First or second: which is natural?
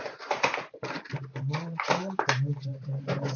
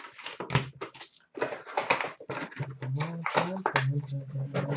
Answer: second